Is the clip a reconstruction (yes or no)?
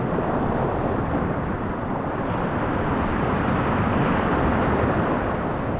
no